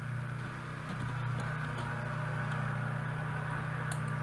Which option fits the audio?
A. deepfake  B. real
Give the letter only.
B